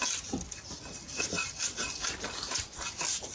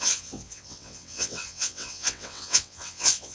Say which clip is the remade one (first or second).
second